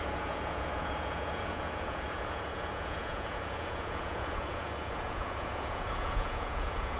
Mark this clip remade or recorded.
remade